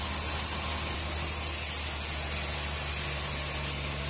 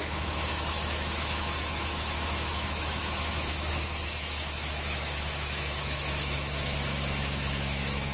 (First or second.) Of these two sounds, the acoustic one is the first